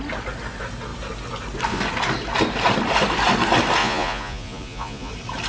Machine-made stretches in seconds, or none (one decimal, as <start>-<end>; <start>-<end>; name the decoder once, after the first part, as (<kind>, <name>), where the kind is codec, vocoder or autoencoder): 3.8-5.1 (vocoder, Vocos)